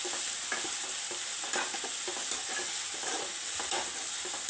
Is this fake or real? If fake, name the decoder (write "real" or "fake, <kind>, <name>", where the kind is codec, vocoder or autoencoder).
real